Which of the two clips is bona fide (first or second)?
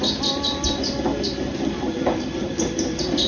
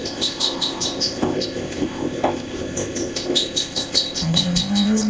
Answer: first